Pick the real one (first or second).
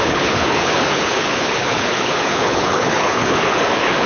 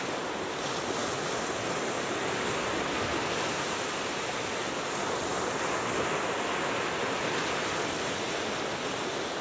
second